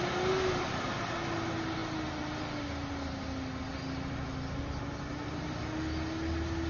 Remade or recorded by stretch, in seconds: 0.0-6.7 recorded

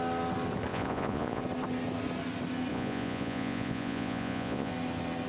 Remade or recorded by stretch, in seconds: 0.0-0.7 recorded; 0.7-1.4 remade; 1.4-2.7 recorded; 2.7-4.7 remade; 4.7-5.3 recorded

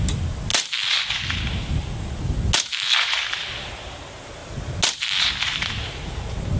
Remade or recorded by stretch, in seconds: 0.0-6.6 recorded

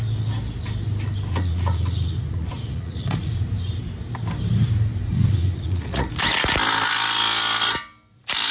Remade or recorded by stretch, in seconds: 0.0-1.3 recorded; 1.3-3.3 remade; 3.3-5.1 recorded; 5.1-6.1 remade; 6.1-8.5 recorded

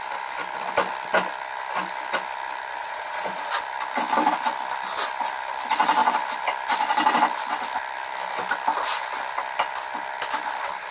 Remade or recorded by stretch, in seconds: 0.0-2.8 recorded; 2.8-3.5 remade; 3.5-10.9 recorded

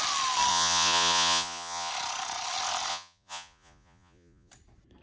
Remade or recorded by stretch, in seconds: 0.0-0.5 recorded; 0.5-1.9 remade; 1.9-2.9 recorded; 2.9-4.5 remade; 4.5-5.0 recorded